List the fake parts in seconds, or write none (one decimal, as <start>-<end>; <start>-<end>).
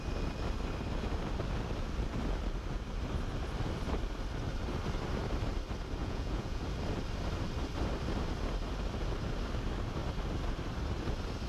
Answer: 6.0-6.6